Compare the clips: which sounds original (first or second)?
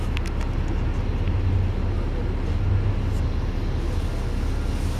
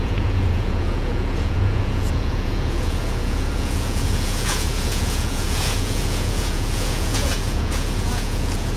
first